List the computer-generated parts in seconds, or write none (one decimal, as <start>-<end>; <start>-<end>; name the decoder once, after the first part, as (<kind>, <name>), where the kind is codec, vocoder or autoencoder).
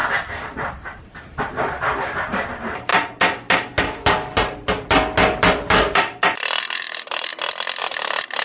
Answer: 0.0-2.9 (vocoder, BigVGAN v2); 6.6-7.3; 7.8-8.4